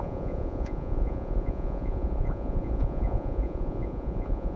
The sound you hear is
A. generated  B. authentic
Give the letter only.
A